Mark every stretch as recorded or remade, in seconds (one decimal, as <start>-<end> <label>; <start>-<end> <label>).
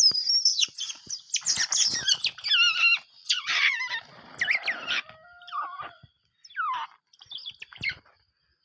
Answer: 0.0-0.5 recorded; 0.5-1.0 remade; 1.0-3.2 recorded; 3.2-3.8 remade; 3.8-8.6 recorded